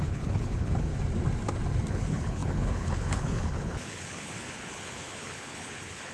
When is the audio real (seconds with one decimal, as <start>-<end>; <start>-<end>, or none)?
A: 0.9-1.9